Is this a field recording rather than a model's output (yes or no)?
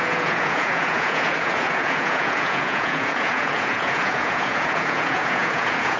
no